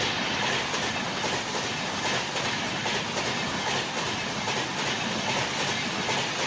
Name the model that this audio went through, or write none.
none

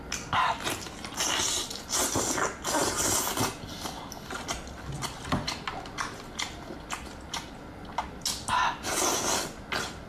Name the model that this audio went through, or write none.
none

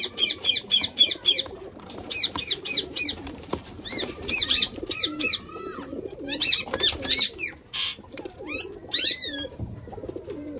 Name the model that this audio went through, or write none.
vocoder, BigVGAN v2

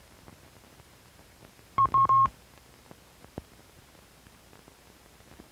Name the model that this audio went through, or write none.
vocoder, BigVGAN v2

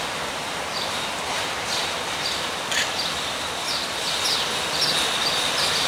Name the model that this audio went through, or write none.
vocoder, BigVGAN v2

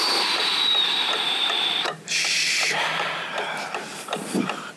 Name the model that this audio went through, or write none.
vocoder, BigVGAN v2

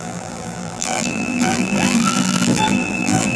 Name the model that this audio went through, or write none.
vocoder, BigVGAN v2